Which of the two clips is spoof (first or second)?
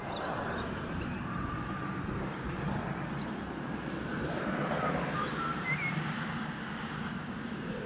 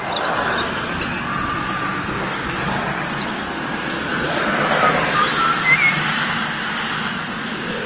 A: first